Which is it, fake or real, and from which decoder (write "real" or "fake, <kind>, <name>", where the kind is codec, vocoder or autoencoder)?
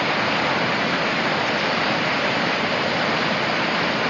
fake, vocoder, BigVGAN v2